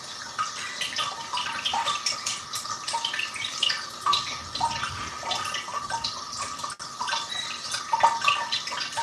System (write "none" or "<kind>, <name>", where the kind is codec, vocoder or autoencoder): none